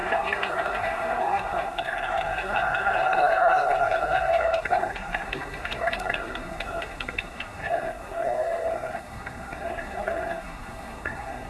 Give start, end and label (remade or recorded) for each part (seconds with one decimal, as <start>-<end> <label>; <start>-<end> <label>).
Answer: 0.0-11.5 remade